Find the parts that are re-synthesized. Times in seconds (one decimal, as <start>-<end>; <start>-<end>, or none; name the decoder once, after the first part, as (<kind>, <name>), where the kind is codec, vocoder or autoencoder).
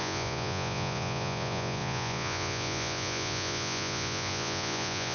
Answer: 0.0-5.1 (vocoder, Vocos)